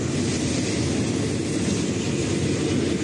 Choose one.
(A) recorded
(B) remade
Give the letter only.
A